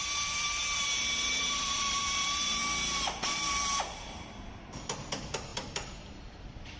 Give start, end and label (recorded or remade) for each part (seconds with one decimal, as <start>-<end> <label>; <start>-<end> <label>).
0.0-2.6 remade; 2.6-3.3 recorded; 3.3-6.8 remade